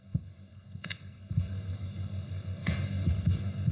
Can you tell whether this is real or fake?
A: fake